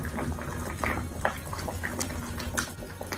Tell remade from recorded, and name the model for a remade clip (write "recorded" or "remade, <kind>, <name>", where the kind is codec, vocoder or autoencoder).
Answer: recorded